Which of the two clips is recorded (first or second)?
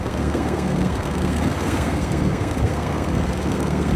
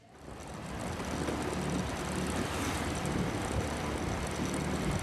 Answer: second